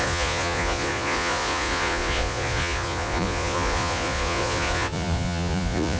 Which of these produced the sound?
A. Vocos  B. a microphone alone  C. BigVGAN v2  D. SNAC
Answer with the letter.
A